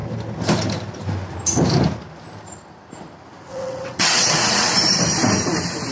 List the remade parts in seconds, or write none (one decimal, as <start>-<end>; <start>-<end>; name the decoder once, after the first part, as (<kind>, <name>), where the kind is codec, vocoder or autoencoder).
3.5-4.7 (vocoder, WaveNeXt)